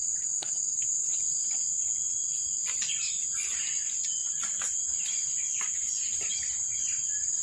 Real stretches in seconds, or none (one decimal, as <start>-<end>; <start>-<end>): 0.0-7.4